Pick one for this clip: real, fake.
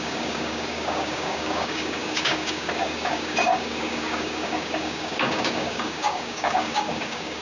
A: fake